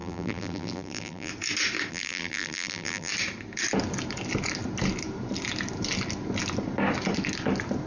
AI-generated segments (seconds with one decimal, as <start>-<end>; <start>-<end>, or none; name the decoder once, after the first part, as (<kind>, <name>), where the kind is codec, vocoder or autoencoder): 0.0-1.3 (vocoder, BigVGAN v2); 1.9-3.1

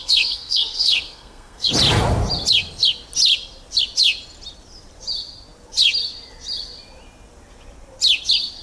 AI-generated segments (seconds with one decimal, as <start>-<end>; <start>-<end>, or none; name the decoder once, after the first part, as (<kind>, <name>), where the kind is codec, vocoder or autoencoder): 0.0-1.7 (codec, SNAC)

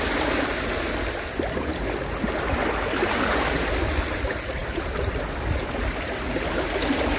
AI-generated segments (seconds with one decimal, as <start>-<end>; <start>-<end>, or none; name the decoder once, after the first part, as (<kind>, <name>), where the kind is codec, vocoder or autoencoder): none

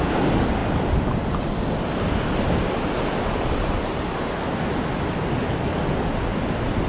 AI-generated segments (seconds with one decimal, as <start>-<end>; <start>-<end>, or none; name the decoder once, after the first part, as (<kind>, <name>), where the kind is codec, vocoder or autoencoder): 6.3-6.9 (vocoder, BigVGAN v2)

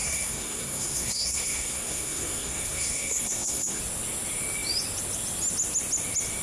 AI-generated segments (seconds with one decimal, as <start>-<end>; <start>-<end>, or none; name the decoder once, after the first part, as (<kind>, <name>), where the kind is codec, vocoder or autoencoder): 0.0-3.8 (codec, SNAC)